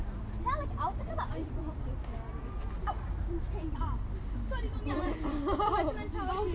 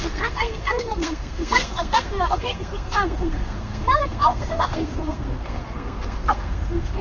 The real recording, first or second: first